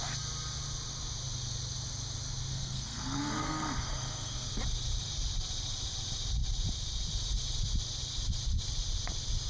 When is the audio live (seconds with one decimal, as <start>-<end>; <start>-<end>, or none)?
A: 0.0-2.5; 4.5-9.5